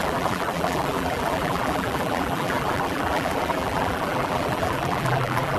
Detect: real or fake fake